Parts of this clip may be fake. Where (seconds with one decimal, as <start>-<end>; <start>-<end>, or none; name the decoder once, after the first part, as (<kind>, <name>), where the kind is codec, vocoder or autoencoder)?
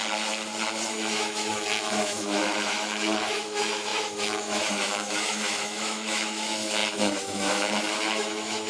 0.9-8.7 (autoencoder, DAC-VAE)